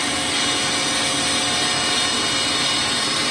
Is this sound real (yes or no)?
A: yes